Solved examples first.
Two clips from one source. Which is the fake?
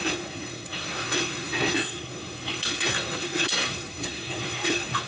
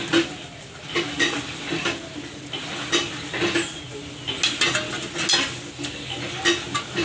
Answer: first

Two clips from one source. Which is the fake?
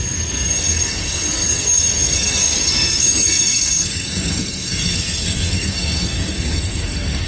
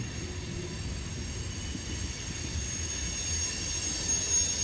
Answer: first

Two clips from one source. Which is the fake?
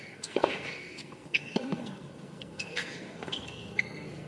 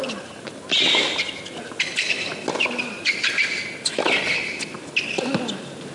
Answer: first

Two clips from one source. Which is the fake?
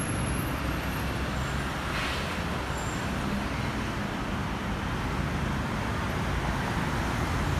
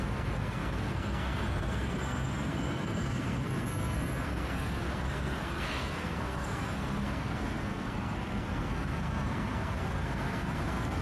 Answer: second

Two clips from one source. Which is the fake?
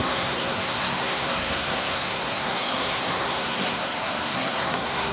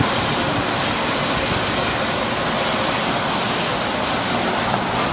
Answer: first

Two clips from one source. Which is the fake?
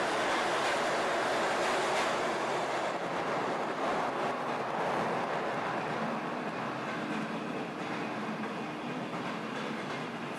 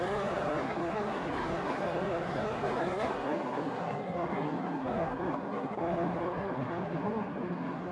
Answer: second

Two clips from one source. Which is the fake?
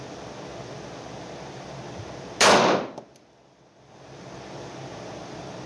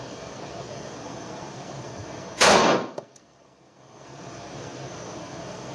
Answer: second